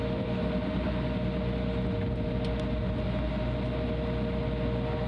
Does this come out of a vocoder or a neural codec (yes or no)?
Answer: no